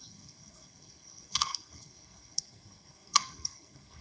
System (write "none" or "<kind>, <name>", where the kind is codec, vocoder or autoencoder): codec, SNAC